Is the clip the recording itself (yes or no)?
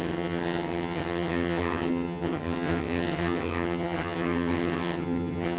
no